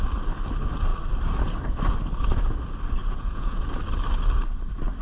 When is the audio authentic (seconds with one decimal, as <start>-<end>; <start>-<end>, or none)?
0.0-3.0; 3.6-5.0